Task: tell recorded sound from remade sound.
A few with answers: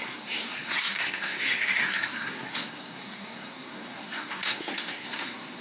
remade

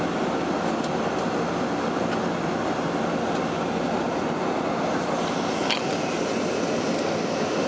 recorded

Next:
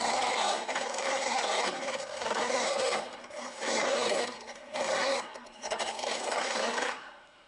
remade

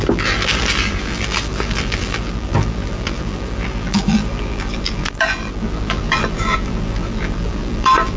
remade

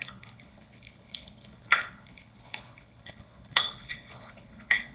remade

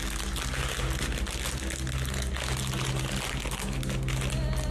recorded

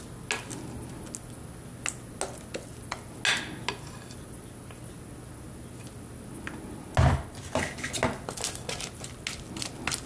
recorded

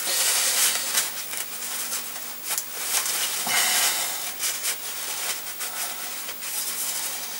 recorded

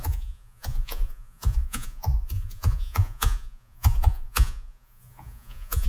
remade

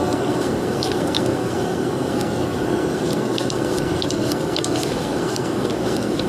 remade